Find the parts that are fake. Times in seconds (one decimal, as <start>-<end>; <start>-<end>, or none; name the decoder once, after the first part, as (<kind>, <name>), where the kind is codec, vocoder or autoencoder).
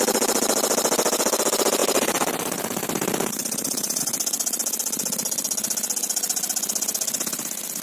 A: 1.8-4.0 (vocoder, BigVGAN v2)